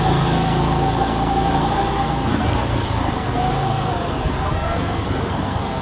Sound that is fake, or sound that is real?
fake